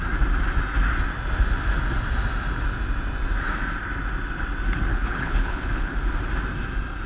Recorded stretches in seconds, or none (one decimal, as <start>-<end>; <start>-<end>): 0.0-4.9; 6.0-7.1